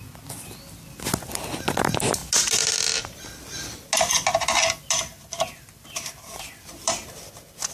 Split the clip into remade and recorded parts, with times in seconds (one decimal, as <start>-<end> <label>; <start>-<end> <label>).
0.0-7.7 recorded